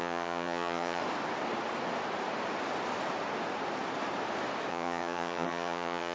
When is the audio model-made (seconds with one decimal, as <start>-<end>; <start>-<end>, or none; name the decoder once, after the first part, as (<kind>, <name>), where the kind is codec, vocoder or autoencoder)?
0.0-1.0 (vocoder, HiFi-GAN); 4.7-6.1